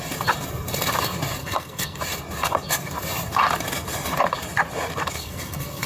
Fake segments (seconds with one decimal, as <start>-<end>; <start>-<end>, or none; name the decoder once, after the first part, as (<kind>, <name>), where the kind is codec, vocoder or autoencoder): 1.4-2.0 (codec, SNAC); 5.2-5.9